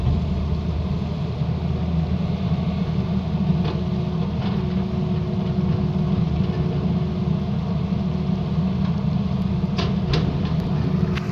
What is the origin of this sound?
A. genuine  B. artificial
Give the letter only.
A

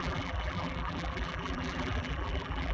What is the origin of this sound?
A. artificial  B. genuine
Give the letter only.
A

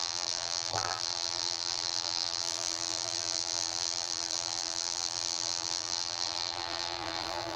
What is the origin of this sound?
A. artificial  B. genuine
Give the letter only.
A